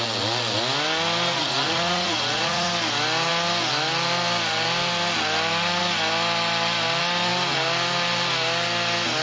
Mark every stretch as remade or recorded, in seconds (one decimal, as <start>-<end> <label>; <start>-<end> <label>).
0.0-1.3 recorded; 1.3-2.7 remade; 2.7-9.2 recorded